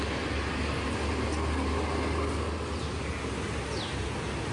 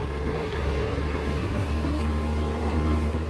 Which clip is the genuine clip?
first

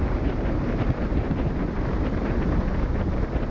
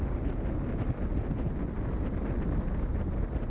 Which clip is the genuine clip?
second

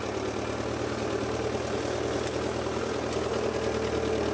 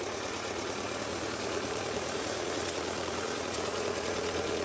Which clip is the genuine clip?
first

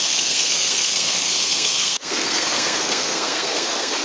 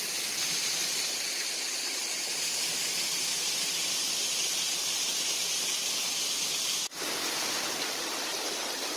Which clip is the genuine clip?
second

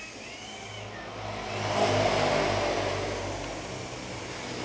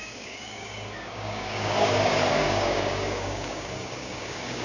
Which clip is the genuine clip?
first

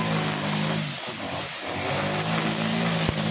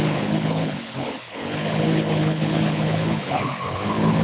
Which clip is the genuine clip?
first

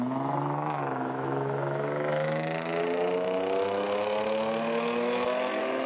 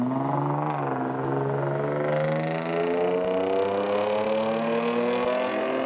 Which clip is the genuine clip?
second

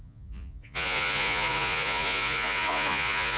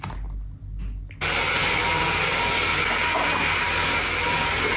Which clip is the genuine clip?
second